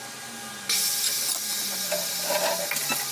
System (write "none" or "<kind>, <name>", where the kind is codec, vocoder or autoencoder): none